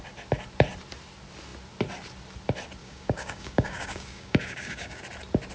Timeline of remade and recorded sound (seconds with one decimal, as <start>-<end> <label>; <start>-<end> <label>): 0.0-2.8 recorded; 2.8-5.0 remade; 5.0-5.5 recorded